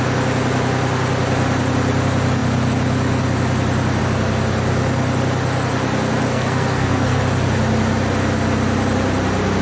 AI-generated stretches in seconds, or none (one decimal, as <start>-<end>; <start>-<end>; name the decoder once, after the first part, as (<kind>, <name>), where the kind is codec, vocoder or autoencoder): 6.3-7.2 (codec, SNAC)